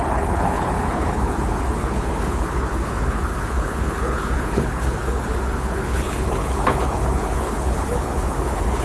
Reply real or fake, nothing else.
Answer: fake